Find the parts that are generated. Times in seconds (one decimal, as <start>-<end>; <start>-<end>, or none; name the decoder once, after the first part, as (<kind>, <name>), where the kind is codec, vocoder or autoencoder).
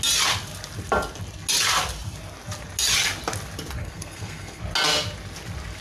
3.8-4.6 (codec, SNAC)